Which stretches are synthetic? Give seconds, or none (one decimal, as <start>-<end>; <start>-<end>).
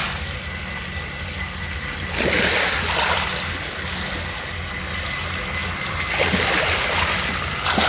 none